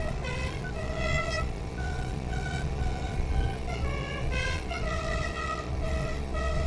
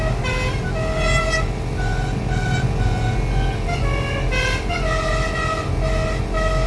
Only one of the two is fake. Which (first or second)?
first